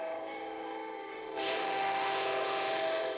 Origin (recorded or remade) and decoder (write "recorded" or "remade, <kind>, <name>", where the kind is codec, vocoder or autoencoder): remade, autoencoder, DAC-VAE